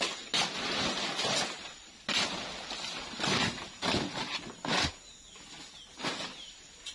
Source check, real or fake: real